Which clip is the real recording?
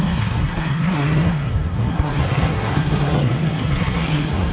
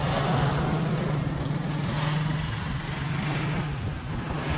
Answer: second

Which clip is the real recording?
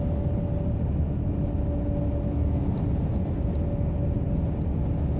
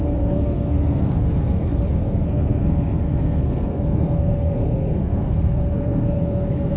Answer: first